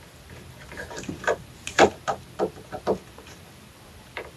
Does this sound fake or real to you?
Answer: fake